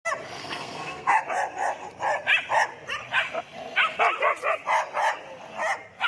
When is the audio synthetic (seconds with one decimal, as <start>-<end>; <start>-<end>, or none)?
0.4-1.2